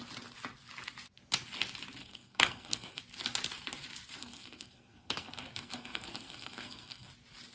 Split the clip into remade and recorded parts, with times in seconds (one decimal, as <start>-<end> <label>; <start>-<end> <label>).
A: 0.0-2.0 recorded; 2.0-3.0 remade; 3.0-4.2 recorded; 4.2-7.1 remade; 7.1-7.5 recorded